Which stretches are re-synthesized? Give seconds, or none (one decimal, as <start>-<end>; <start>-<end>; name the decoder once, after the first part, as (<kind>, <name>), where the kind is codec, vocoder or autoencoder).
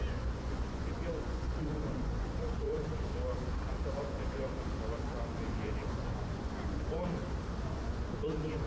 0.0-3.1 (vocoder, Vocos); 4.0-4.5; 5.6-7.2; 7.7-8.7